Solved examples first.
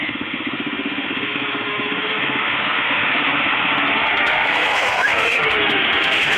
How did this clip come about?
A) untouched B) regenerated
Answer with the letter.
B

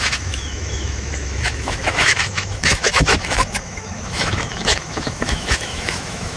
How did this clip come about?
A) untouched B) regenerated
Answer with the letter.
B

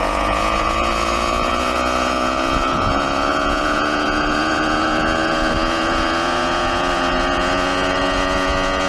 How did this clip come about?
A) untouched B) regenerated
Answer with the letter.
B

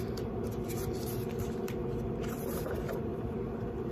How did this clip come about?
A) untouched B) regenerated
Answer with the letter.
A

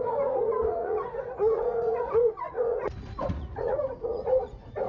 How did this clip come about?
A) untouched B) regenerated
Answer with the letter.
B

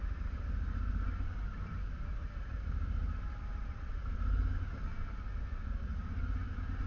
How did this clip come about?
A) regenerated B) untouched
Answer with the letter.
B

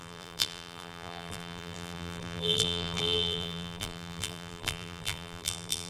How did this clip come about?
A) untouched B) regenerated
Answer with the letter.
B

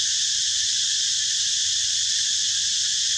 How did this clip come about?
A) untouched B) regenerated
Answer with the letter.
A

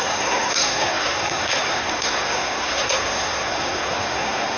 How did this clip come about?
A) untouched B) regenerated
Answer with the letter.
B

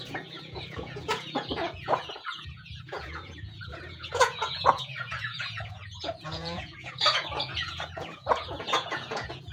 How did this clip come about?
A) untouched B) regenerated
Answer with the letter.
B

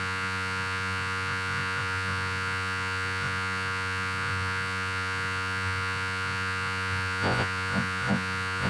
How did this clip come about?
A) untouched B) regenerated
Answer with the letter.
B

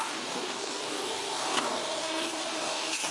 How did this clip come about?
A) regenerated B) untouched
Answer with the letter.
A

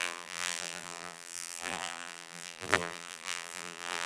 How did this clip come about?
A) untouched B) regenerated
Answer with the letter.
B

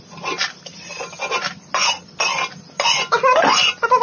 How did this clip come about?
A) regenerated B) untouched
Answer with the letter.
B